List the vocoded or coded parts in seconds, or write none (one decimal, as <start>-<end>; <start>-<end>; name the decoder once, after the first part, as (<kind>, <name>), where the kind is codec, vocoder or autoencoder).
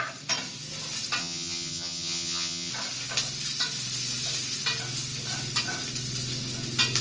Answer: 1.2-2.7 (vocoder, HiFi-GAN)